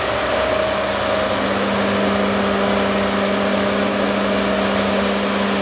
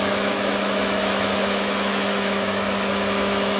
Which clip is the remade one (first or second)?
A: second